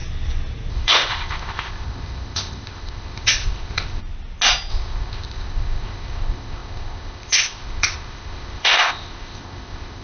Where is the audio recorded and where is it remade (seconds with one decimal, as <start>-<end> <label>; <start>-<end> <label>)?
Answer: 0.0-0.7 recorded; 0.7-4.0 remade; 4.0-4.7 recorded; 4.7-10.0 remade